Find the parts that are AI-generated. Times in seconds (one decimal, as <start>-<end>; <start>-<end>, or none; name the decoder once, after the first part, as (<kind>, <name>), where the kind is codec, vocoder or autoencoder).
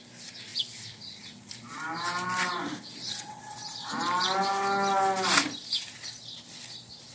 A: 3.0-3.9 (vocoder, WaveNeXt)